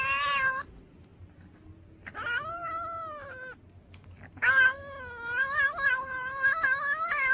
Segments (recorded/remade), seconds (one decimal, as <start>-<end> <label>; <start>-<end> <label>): 0.0-7.3 recorded